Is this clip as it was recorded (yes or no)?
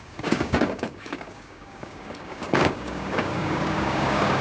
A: no